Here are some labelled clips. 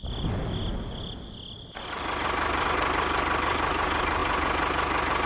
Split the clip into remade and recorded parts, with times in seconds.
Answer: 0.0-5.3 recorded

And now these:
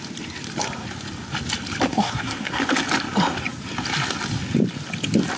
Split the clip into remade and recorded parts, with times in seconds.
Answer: 0.0-1.9 recorded; 1.9-2.6 remade; 2.6-5.4 recorded

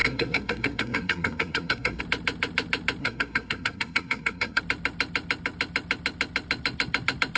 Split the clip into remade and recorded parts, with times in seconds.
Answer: 0.0-2.0 remade; 2.0-3.0 recorded; 3.0-4.6 remade; 4.6-7.4 recorded